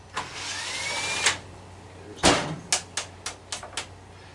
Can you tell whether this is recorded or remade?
recorded